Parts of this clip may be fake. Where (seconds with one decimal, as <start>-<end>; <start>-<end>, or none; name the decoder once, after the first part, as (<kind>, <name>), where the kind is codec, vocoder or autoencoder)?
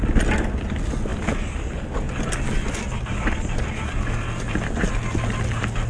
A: none